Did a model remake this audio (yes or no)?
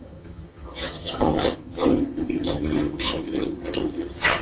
yes